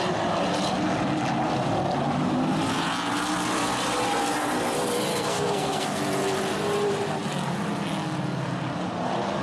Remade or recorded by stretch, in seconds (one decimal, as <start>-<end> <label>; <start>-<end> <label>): 0.0-5.1 recorded; 5.1-6.0 remade; 6.0-9.4 recorded

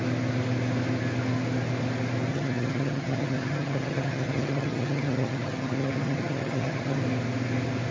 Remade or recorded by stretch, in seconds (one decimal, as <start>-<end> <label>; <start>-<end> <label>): 0.0-2.3 recorded; 2.3-7.0 remade; 7.0-7.9 recorded

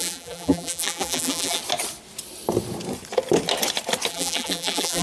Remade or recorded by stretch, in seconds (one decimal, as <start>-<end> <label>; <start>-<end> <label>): 0.0-1.6 remade; 1.6-4.1 recorded; 4.1-5.0 remade

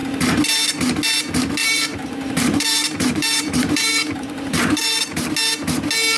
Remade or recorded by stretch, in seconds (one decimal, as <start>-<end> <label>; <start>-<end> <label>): 0.0-1.6 recorded; 1.6-5.3 remade; 5.3-6.2 recorded

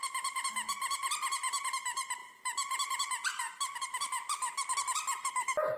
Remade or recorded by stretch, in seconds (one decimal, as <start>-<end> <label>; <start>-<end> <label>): 0.0-3.9 recorded; 3.9-5.3 remade; 5.3-5.8 recorded